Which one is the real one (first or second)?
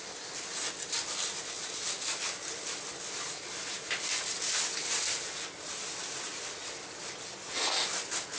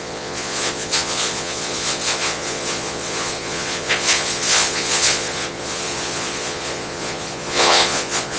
first